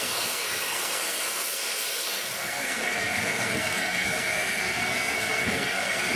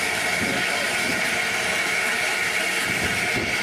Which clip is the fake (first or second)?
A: first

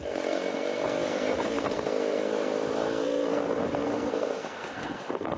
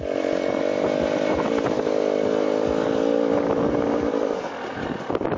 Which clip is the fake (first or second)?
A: first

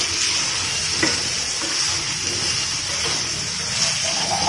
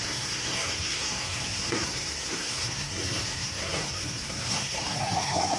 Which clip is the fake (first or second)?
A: second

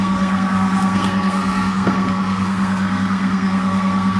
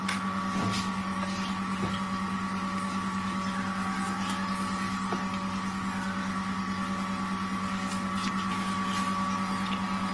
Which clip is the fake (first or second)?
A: first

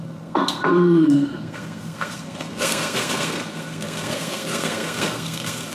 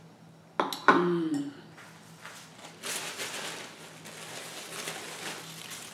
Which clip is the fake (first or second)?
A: first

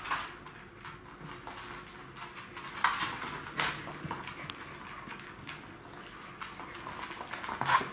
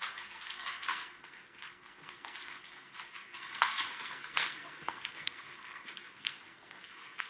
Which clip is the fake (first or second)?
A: second